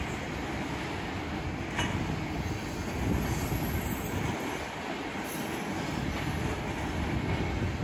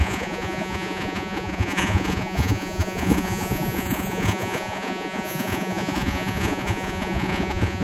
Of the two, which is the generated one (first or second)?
second